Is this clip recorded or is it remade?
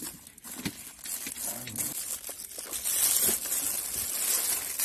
recorded